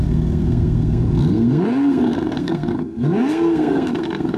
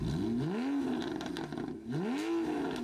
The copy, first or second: first